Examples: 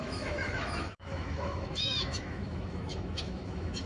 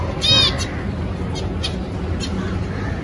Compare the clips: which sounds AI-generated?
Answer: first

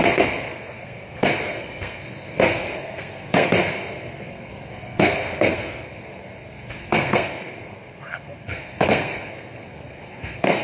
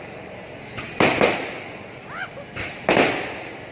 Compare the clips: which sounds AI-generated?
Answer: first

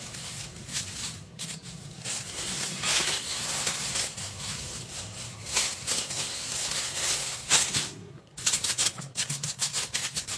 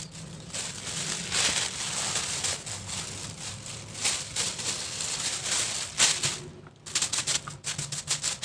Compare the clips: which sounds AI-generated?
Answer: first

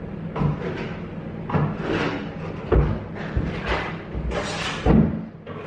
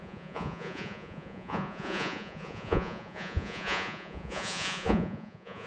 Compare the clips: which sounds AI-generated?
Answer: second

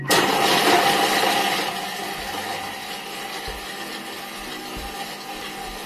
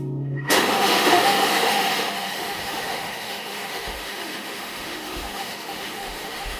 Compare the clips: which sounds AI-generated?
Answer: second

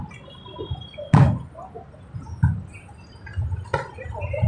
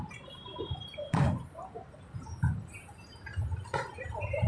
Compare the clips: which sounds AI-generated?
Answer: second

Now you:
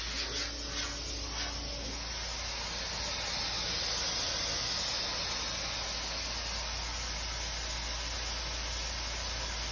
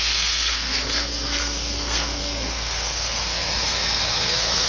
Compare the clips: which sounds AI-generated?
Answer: second